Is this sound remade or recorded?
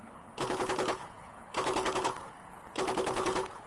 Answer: remade